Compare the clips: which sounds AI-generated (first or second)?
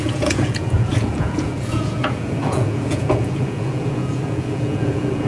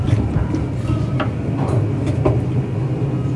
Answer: first